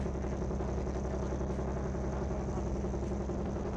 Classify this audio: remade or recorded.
recorded